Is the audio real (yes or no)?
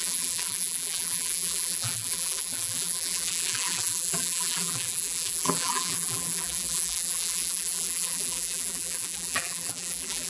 no